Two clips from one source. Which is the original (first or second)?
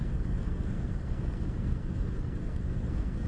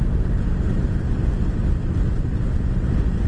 second